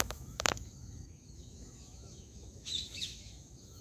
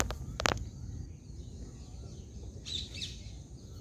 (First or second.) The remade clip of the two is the first